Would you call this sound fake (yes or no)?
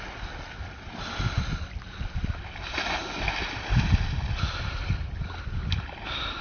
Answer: no